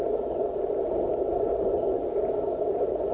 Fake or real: fake